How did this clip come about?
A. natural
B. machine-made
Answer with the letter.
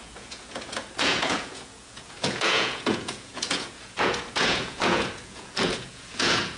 B